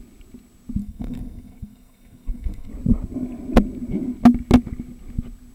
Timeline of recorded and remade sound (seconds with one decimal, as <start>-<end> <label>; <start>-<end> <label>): 0.0-0.8 recorded; 0.8-2.7 remade; 2.7-5.5 recorded